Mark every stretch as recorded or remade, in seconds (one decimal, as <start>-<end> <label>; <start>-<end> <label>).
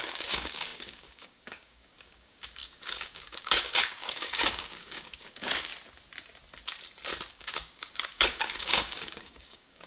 0.0-5.7 remade; 5.7-7.3 recorded; 7.3-9.9 remade